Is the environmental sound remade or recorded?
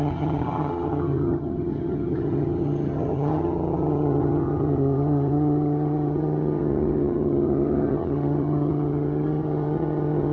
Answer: remade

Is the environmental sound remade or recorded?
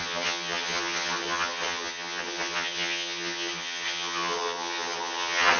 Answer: remade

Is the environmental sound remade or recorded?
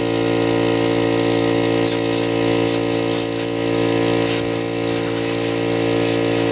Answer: recorded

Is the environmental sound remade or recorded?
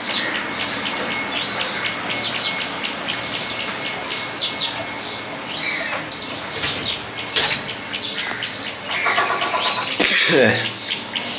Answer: recorded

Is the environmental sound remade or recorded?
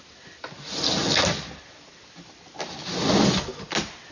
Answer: recorded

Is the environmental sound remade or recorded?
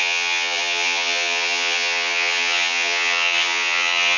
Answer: remade